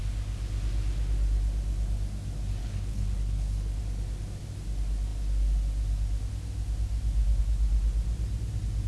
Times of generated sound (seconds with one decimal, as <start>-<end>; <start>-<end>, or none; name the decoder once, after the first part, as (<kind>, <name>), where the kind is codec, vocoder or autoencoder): 2.6-3.8 (codec, HILCodec)